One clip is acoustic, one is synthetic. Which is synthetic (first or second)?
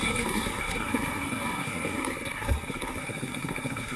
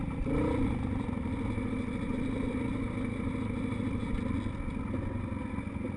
first